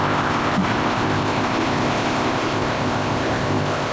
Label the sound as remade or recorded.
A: remade